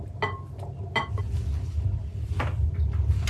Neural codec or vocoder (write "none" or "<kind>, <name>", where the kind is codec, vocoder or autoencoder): none